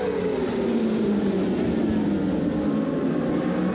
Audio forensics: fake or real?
real